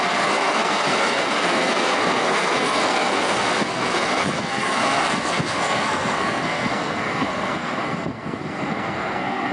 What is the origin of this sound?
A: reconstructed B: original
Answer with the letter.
A